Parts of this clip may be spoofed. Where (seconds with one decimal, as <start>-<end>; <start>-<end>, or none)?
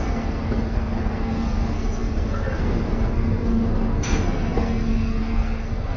0.0-6.0